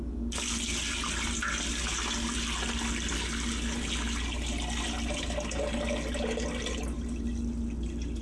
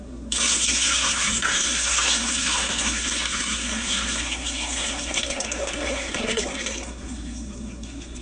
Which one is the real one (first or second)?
first